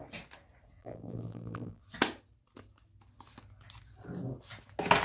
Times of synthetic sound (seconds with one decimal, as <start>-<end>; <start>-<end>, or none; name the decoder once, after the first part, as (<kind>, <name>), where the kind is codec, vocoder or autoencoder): 0.8-1.8 (vocoder, BigVGAN v2)